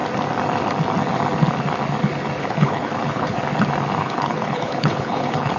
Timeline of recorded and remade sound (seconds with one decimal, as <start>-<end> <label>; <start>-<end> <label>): 0.0-2.4 recorded; 2.4-3.4 remade; 3.4-4.0 recorded; 4.0-5.6 remade